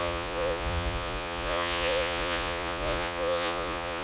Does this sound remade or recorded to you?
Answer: remade